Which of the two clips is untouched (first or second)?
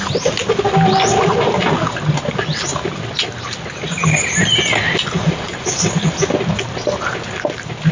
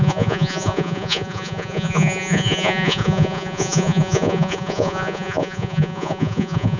first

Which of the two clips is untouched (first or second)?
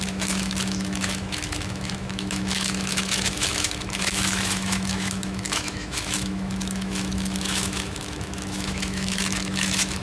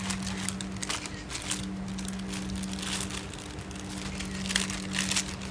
second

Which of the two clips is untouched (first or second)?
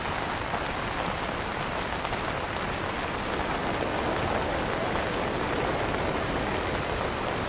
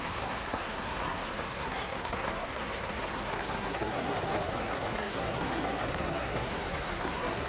first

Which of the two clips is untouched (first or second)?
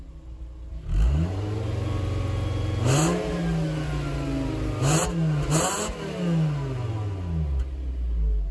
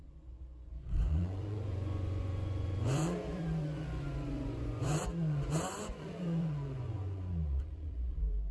first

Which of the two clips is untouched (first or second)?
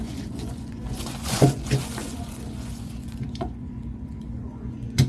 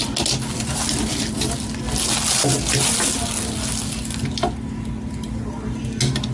second